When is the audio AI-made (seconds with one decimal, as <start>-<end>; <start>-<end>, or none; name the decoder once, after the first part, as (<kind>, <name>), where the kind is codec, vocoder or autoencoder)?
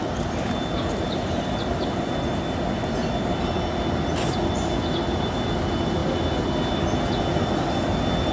none